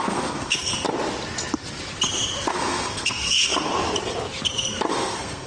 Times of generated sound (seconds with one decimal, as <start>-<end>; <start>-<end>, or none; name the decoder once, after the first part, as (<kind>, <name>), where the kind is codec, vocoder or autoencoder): 0.0-0.7 (codec, SNAC); 2.5-3.7; 4.9-5.5